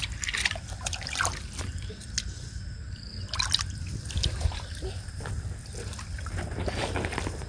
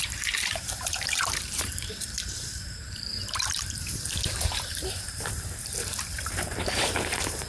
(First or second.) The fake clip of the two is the second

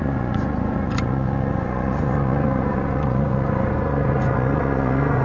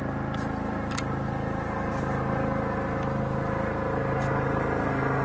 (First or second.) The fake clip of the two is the first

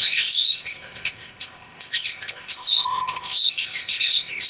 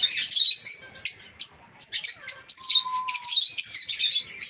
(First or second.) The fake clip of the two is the first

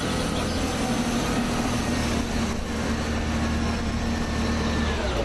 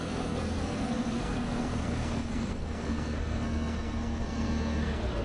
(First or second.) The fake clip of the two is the second